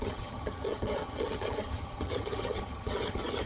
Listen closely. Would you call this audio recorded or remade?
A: remade